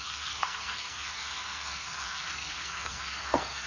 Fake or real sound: fake